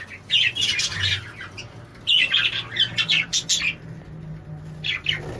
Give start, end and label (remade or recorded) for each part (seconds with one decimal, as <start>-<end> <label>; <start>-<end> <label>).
0.0-5.4 recorded